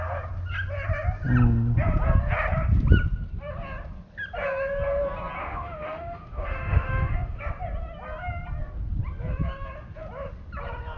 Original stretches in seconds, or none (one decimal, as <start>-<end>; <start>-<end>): 0.0-5.4; 7.4-11.0